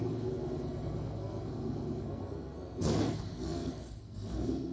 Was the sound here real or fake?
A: fake